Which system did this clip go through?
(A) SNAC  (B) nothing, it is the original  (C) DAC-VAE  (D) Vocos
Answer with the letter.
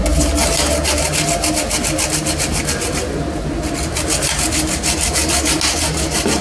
B